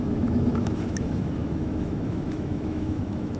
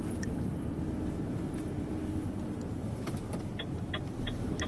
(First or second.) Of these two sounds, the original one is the second